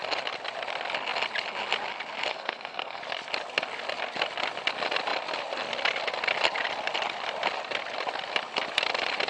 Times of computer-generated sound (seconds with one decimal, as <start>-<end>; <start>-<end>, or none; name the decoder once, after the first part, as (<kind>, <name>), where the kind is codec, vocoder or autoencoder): 2.3-3.0 (codec, SNAC)